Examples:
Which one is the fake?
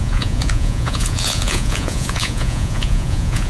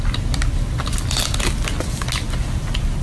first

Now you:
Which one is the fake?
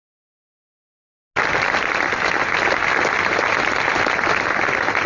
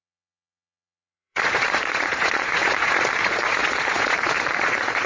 second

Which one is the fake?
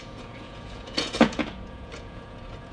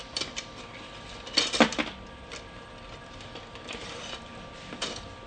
first